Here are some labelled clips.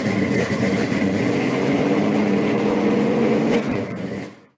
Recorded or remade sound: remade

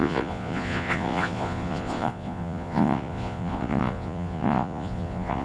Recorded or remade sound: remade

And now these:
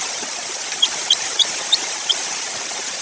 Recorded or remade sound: remade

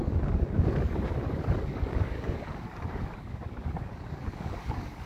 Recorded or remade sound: remade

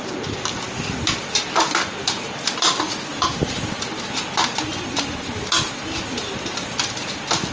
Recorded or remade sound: recorded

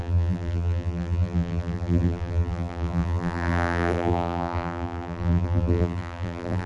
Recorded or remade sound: remade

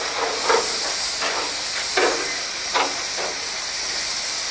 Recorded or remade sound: recorded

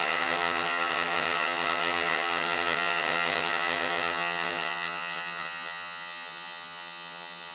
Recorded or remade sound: remade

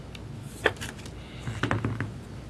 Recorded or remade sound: recorded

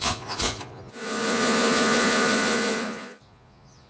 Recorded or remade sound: remade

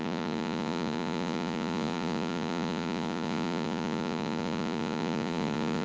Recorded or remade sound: remade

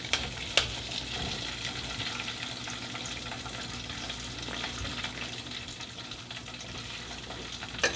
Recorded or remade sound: recorded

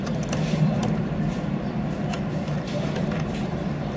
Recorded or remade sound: recorded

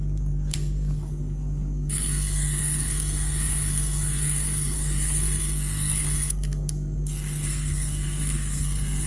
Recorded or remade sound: remade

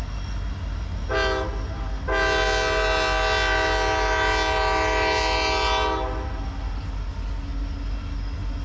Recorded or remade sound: recorded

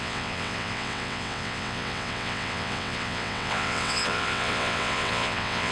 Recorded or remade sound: remade